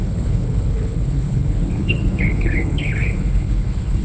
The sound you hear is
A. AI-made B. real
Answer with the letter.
A